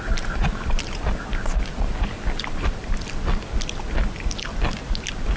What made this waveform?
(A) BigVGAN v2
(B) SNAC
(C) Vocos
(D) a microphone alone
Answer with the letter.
D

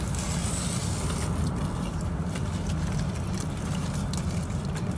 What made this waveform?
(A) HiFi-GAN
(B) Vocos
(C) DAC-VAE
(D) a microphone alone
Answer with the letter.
D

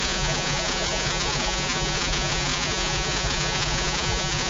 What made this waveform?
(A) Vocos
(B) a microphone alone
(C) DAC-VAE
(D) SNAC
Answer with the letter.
A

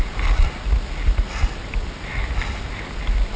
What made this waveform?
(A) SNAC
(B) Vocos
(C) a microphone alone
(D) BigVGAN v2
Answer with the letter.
C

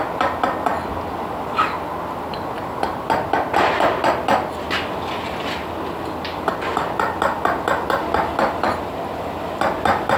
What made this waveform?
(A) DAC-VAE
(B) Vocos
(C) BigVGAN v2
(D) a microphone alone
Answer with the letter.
D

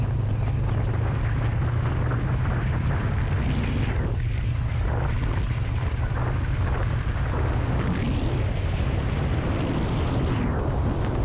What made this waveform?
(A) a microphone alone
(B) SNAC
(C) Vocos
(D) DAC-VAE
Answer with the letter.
A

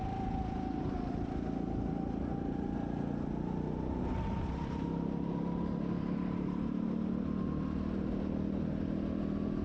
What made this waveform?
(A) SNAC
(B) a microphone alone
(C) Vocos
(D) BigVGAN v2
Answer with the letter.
B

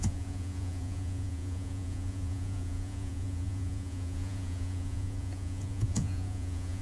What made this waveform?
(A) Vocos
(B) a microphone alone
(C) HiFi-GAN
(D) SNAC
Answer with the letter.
A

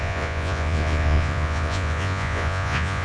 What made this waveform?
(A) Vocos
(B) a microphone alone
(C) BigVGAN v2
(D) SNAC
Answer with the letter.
A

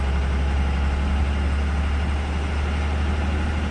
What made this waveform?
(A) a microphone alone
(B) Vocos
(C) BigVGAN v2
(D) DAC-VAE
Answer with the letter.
A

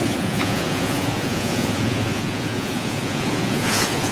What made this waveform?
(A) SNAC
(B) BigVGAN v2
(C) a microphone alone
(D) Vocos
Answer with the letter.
D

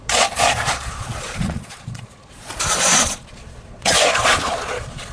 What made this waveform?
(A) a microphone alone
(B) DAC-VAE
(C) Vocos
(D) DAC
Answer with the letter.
C